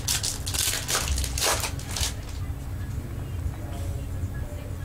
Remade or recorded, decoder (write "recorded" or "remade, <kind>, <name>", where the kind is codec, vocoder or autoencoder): recorded